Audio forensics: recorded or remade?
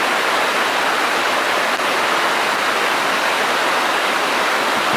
recorded